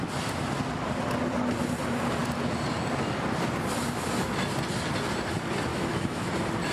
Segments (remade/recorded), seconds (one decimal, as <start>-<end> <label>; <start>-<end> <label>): 0.0-5.7 recorded; 5.7-6.3 remade; 6.3-6.7 recorded